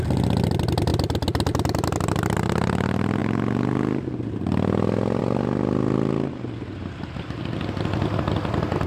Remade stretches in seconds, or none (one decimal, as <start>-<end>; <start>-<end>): none